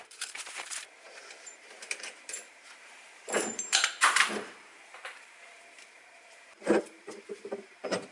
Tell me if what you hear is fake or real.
fake